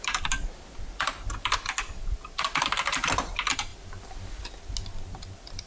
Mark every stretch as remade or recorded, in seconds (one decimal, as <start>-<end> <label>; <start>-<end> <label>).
0.0-5.7 recorded